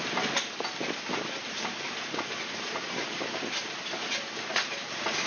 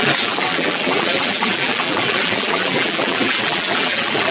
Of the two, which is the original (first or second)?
first